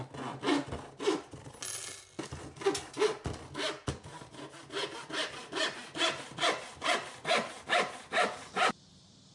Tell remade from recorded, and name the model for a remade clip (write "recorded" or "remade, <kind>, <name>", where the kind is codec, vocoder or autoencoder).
recorded